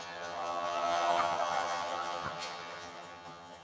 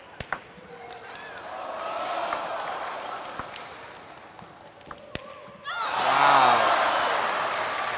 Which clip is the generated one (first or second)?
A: first